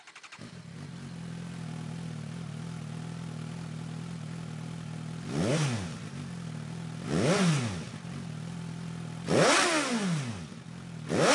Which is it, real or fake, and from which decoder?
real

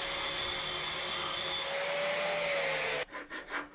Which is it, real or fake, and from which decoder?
real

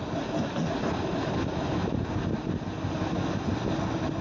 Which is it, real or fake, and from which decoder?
real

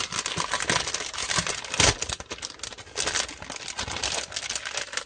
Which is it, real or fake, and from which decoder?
real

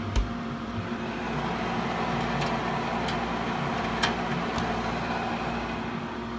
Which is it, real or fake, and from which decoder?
real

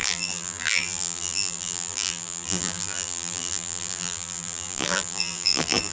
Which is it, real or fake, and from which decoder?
fake, vocoder, BigVGAN v2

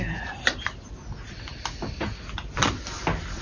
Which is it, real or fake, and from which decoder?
real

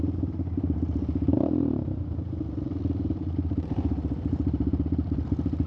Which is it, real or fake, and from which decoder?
fake, vocoder, BigVGAN v2